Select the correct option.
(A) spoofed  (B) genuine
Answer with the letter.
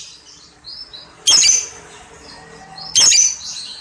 B